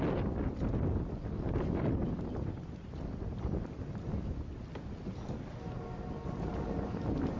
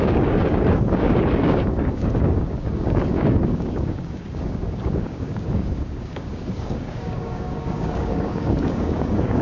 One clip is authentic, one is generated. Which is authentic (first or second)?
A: first